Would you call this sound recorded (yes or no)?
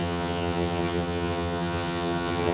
no